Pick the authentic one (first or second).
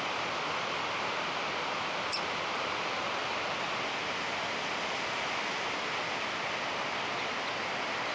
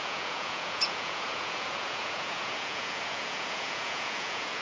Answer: first